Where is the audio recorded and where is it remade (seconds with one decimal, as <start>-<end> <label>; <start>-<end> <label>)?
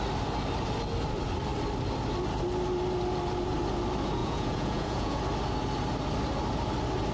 0.0-4.2 recorded; 4.2-5.2 remade; 5.2-7.1 recorded